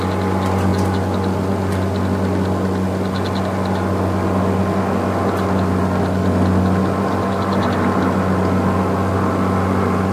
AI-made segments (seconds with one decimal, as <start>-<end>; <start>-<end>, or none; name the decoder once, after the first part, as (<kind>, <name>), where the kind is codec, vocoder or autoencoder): none